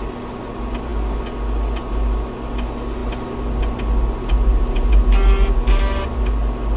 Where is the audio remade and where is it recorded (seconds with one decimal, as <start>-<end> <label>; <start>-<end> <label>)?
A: 0.0-6.8 recorded